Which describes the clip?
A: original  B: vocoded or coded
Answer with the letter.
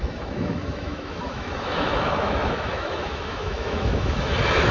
B